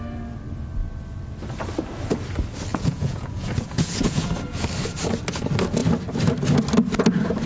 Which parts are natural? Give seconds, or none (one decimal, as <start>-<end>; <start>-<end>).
0.0-2.7; 4.3-7.5